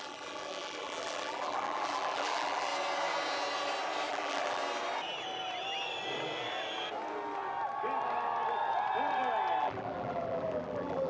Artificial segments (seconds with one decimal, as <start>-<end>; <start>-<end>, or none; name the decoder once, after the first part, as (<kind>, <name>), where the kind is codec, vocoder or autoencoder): 0.0-2.7 (vocoder, BigVGAN v2); 4.1-4.6; 9.6-11.1